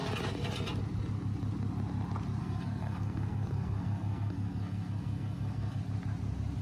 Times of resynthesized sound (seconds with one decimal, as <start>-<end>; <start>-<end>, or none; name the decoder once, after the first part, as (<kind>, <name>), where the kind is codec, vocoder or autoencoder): 2.4-5.8 (codec, SNAC)